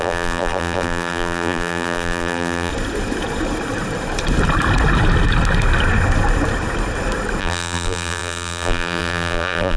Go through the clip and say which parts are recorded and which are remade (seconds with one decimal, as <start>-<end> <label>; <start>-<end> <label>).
0.0-2.7 remade; 2.7-7.4 recorded; 7.4-9.8 remade